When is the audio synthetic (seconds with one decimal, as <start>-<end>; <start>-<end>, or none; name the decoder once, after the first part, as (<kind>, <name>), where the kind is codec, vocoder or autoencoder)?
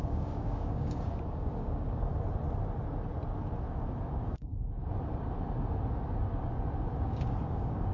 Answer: 0.0-2.1 (codec, DAC); 4.1-4.5; 7.0-7.9